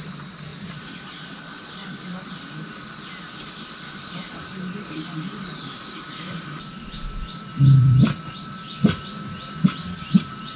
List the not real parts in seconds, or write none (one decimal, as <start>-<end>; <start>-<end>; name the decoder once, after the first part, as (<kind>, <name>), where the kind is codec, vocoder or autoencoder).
0.0-1.8 (vocoder, BigVGAN v2); 2.9-10.6